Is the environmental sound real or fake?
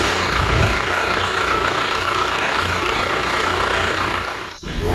fake